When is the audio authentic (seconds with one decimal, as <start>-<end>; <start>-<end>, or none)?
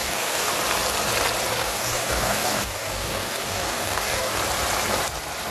0.5-1.5; 4.4-5.5